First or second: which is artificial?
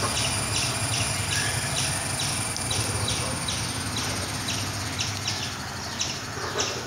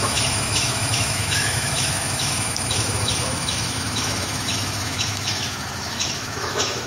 second